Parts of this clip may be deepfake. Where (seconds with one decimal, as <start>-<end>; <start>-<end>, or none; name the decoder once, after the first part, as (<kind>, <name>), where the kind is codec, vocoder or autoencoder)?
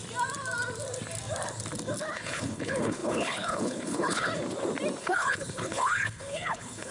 2.1-4.3 (codec, HILCodec); 5.0-6.9